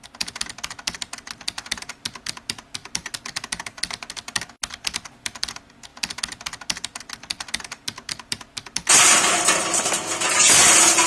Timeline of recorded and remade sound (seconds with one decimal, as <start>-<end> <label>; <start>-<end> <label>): 0.0-11.1 recorded